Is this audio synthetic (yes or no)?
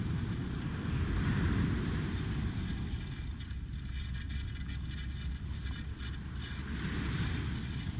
no